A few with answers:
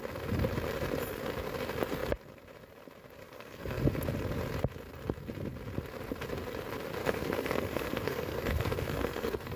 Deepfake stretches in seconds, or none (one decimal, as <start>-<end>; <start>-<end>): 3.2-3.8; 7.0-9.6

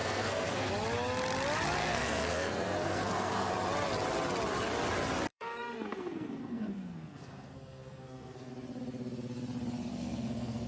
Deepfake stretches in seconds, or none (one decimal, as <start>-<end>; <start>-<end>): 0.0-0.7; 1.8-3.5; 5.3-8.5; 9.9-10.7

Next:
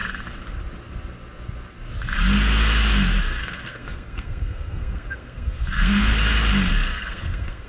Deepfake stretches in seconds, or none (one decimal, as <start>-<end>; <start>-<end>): 3.2-6.1; 6.7-7.7

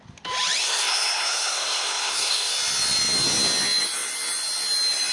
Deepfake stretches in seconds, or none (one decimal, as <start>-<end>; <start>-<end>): 0.6-2.5